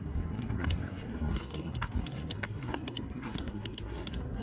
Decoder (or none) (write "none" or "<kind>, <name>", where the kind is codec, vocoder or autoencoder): codec, SNAC